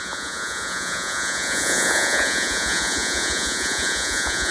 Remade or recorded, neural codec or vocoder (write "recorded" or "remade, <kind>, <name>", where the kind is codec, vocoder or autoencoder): remade, vocoder, Vocos